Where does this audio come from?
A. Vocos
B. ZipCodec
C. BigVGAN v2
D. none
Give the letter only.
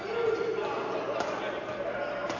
D